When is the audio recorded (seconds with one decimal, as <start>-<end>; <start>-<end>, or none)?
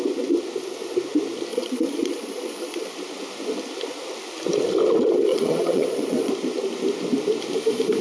0.0-1.5; 2.9-5.3; 6.3-8.0